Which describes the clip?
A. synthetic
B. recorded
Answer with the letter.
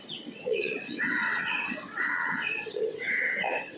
A